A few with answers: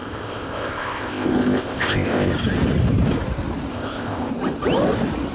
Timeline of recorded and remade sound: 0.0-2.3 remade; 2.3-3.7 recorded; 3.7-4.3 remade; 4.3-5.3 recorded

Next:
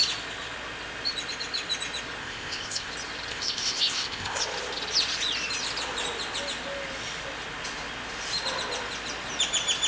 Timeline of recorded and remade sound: 0.0-2.2 recorded; 2.2-2.9 remade; 2.9-3.3 recorded; 3.3-4.4 remade; 4.4-9.9 recorded

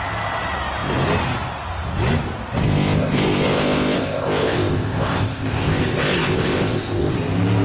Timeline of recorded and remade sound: 0.0-2.6 recorded; 2.6-7.1 remade; 7.1-7.6 recorded

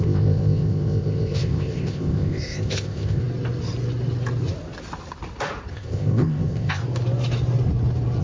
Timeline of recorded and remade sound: 0.0-3.2 remade; 3.2-5.7 recorded; 5.7-6.8 remade; 6.8-8.2 recorded

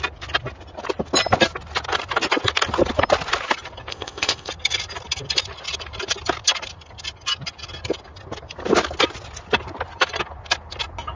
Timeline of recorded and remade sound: 0.0-3.9 recorded; 3.9-4.5 remade; 4.5-11.2 recorded